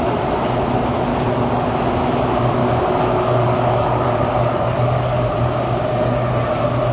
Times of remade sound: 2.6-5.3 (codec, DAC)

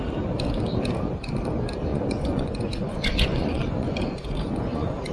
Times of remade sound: 1.9-5.1 (vocoder, Vocos)

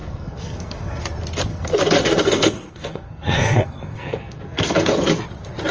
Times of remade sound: 0.0-1.0 (codec, SNAC); 1.5-4.9

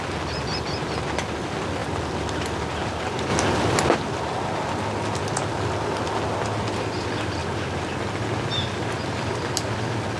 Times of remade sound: none

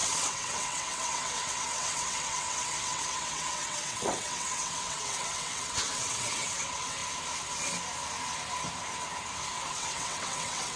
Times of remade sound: 0.0-7.0 (vocoder, WaveNeXt); 9.7-10.8